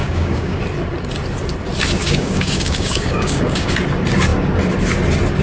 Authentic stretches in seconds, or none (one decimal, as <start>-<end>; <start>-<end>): 0.6-2.0; 3.7-5.4